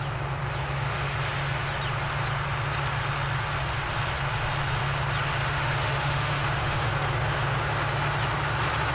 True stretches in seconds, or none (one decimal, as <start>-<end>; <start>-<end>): 0.0-5.4; 6.9-8.9